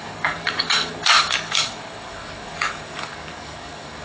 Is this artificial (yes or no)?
yes